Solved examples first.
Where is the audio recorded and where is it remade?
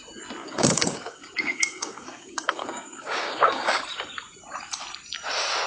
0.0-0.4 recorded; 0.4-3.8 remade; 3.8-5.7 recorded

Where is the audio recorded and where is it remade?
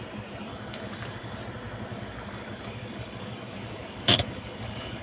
0.0-0.5 recorded; 0.5-1.4 remade; 1.4-1.9 recorded; 1.9-5.0 remade